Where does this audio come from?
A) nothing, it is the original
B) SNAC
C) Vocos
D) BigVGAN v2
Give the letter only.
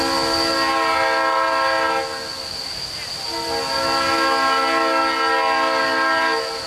A